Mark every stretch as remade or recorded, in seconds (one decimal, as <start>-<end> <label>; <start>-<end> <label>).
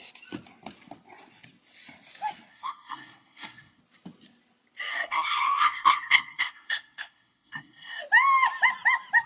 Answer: 0.0-2.5 recorded; 2.5-3.8 remade; 3.8-4.9 recorded; 4.9-8.0 remade; 8.0-9.3 recorded